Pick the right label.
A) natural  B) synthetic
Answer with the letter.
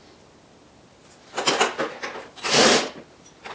A